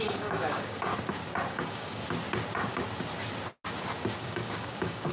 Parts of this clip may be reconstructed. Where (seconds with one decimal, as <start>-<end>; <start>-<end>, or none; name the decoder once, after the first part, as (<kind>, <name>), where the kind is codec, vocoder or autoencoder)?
0.0-0.9 (codec, DAC); 1.5-2.0; 4.2-5.1